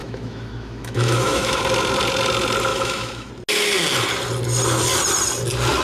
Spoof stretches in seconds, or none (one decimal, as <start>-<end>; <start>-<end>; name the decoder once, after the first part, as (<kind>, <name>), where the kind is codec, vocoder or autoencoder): 0.0-1.6 (autoencoder, DAC-VAE); 2.7-3.3